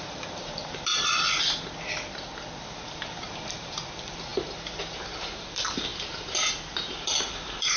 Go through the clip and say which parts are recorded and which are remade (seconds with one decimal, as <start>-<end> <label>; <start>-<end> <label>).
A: 0.0-0.9 remade; 0.9-2.6 recorded; 2.6-7.8 remade